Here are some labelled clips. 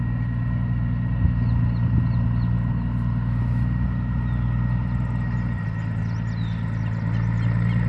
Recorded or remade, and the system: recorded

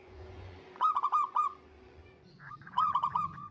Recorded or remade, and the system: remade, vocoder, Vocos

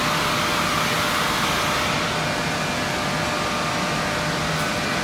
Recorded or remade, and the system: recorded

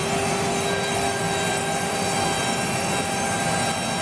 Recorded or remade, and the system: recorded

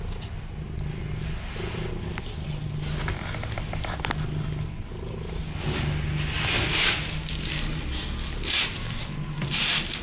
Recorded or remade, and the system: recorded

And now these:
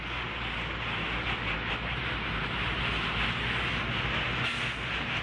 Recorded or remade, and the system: recorded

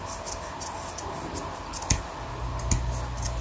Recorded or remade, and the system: recorded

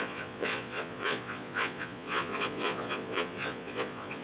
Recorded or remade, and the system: remade, vocoder, Vocos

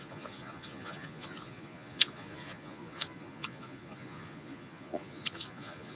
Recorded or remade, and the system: remade, vocoder, Vocos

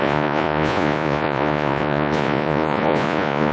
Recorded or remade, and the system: remade, vocoder, Vocos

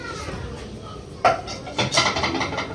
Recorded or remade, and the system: recorded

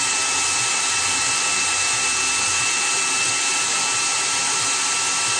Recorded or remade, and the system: recorded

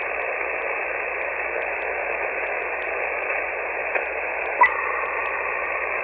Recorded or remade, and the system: recorded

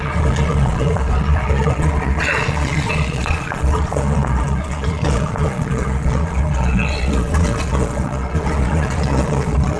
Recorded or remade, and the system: remade, vocoder, Vocos